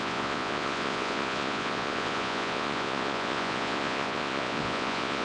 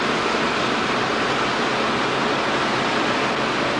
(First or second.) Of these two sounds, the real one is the second